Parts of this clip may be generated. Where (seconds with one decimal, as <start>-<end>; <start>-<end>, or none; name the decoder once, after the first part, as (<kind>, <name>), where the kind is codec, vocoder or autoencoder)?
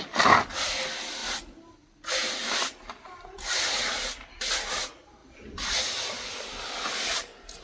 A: none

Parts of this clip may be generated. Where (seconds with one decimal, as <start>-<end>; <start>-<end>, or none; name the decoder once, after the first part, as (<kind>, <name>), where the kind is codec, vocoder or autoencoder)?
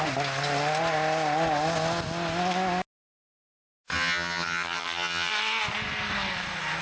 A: 3.9-5.3 (vocoder, HiFi-GAN)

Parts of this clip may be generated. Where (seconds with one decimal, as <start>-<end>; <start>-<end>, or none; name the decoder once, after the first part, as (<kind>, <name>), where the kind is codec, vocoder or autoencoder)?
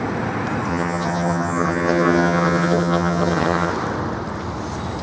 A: 0.7-3.7 (vocoder, HiFi-GAN)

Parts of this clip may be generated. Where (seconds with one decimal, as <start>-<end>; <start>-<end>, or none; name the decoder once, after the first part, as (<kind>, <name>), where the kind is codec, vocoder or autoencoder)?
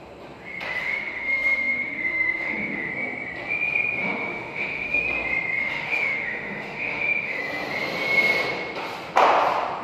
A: 0.8-2.9 (autoencoder, DAC-VAE); 4.0-5.0; 5.6-7.4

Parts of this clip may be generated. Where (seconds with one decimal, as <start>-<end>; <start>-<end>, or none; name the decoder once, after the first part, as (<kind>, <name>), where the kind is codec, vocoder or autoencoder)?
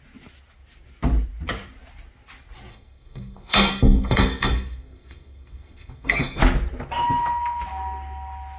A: 2.7-6.4 (codec, SNAC)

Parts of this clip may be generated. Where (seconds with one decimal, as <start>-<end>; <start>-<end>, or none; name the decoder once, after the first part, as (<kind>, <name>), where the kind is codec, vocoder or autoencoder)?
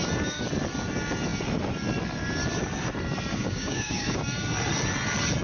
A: 3.3-4.2 (codec, DAC)